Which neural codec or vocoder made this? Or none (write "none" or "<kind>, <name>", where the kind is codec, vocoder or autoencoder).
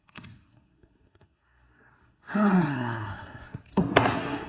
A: codec, SNAC